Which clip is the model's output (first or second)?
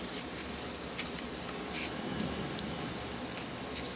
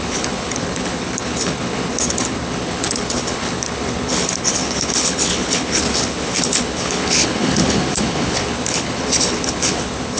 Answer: second